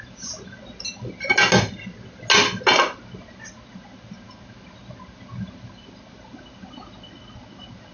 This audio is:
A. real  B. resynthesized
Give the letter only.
A